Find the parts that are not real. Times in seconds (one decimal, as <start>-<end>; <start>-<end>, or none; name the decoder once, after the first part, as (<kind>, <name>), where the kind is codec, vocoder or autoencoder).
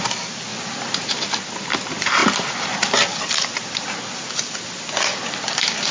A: 0.0-5.9 (vocoder, BigVGAN v2)